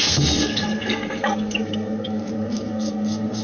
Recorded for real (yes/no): no